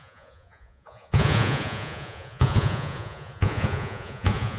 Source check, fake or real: fake